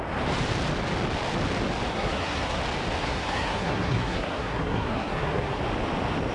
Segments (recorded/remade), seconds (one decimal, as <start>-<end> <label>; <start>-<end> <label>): 0.0-1.9 recorded; 1.9-2.6 remade; 2.6-3.0 recorded; 3.0-5.6 remade; 5.6-6.3 recorded